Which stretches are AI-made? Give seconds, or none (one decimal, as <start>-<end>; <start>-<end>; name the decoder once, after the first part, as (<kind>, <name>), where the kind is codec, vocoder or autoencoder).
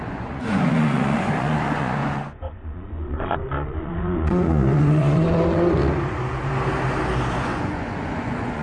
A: 0.0-5.8 (vocoder, Vocos); 7.4-8.6